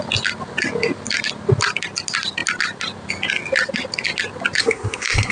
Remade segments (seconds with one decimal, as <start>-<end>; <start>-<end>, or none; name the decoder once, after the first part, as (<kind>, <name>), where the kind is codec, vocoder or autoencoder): 4.6-5.3 (codec, SNAC)